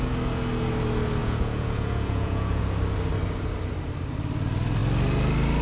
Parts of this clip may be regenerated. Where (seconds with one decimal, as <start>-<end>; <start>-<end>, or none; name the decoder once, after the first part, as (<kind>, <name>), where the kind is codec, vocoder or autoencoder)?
1.2-2.6 (vocoder, Vocos)